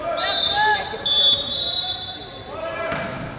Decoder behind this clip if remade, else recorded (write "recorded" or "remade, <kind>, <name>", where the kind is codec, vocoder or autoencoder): recorded